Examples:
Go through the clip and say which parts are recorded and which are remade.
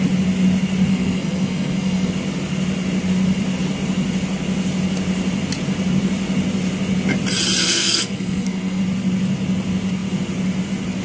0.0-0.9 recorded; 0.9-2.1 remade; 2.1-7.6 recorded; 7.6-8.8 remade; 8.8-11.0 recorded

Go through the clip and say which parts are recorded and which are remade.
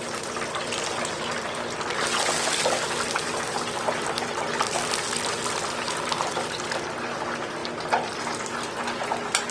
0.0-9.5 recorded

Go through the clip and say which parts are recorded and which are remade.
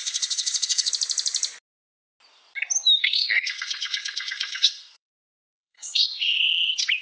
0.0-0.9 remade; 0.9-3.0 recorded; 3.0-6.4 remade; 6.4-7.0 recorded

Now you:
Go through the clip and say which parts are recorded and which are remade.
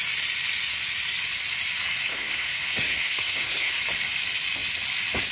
0.0-2.1 recorded; 2.1-3.7 remade; 3.7-5.3 recorded